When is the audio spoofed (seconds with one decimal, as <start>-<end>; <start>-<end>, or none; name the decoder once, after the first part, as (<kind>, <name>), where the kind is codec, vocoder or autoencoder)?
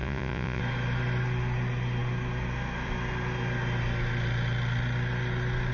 0.0-0.6 (vocoder, Vocos)